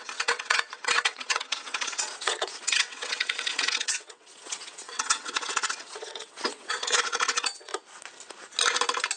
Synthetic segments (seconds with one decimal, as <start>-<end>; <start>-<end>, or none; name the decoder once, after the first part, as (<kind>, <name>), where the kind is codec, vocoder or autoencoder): 0.0-7.7 (vocoder, WaveNeXt)